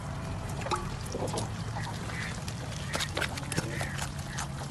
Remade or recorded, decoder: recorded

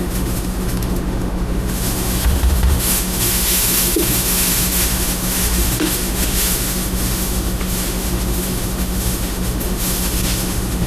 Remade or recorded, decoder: remade, autoencoder, DAC-VAE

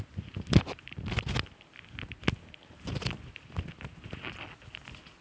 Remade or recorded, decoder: recorded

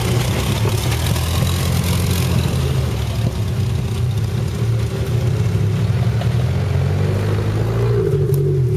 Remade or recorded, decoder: recorded